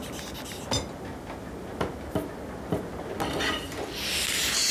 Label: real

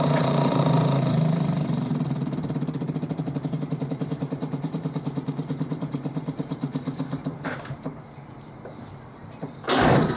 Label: fake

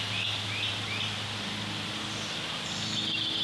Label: real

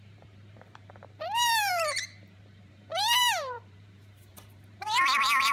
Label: fake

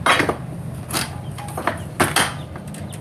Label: real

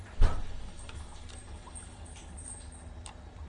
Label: real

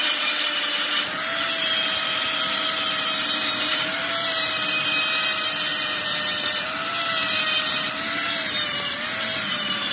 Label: fake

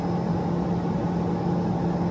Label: real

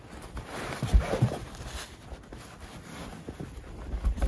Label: real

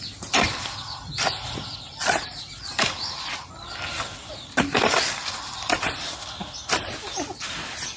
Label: real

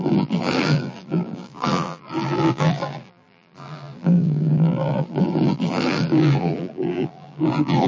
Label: fake